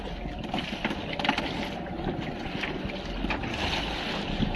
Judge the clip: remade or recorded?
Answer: recorded